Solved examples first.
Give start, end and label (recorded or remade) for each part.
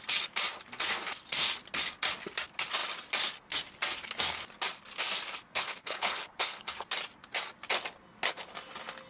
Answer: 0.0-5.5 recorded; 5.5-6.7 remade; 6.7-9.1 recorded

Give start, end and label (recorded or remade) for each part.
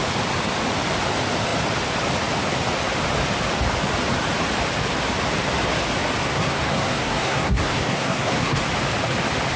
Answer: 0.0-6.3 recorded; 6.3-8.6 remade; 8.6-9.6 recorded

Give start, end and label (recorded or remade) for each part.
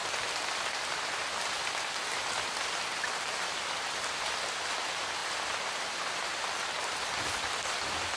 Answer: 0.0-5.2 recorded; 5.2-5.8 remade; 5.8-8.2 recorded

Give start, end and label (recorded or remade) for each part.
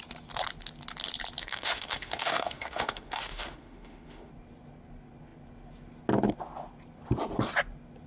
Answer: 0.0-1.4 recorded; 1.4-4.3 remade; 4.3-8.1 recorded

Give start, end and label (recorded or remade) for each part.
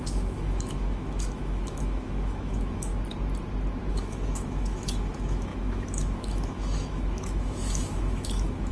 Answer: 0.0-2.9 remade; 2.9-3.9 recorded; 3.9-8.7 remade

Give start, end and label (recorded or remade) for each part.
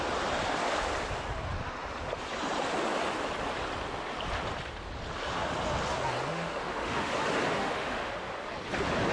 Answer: 0.0-6.3 recorded; 6.3-7.1 remade; 7.1-7.6 recorded; 7.6-8.1 remade; 8.1-9.1 recorded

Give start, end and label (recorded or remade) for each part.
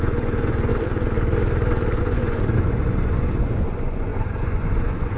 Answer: 0.0-0.7 remade; 0.7-2.0 recorded; 2.0-5.2 remade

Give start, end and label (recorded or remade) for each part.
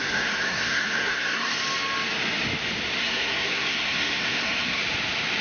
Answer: 0.0-1.6 remade; 1.6-3.0 recorded; 3.0-4.8 remade; 4.8-5.4 recorded